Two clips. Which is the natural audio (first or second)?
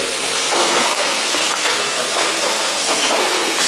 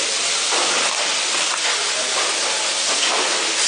second